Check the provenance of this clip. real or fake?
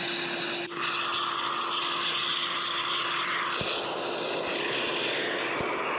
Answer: real